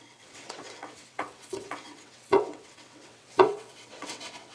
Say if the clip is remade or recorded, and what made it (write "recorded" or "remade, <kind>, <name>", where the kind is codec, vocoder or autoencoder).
remade, vocoder, WaveNeXt